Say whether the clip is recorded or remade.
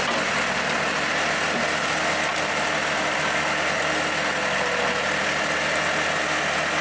recorded